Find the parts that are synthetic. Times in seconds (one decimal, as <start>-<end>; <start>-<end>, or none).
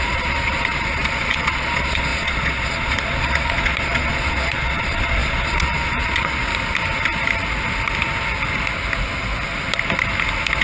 0.0-6.5